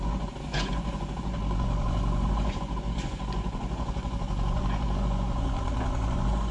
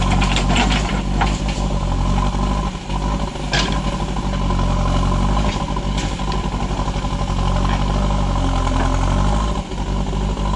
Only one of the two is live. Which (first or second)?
second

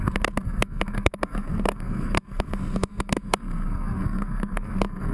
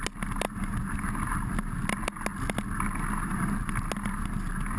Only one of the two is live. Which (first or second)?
second